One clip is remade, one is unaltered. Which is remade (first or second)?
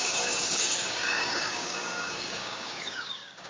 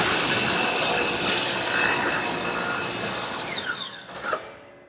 first